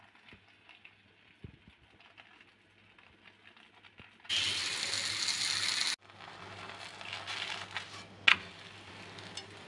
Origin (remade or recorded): recorded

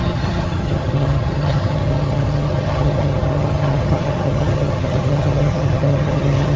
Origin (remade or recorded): remade